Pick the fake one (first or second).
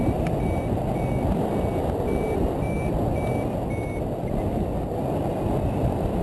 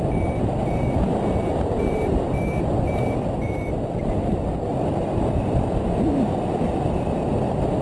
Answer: second